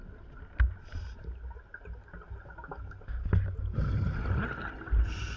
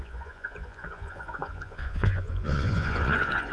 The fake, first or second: second